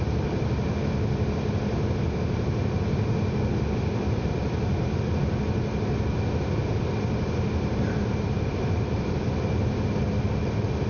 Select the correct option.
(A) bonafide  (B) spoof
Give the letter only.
A